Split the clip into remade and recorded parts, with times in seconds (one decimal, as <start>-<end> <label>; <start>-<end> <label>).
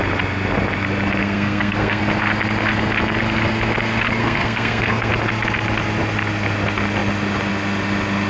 0.0-1.2 recorded; 1.2-2.0 remade; 2.0-4.2 recorded; 4.2-5.1 remade; 5.1-8.3 recorded